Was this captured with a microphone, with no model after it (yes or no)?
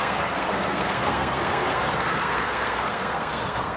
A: no